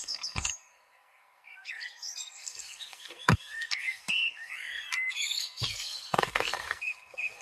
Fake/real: fake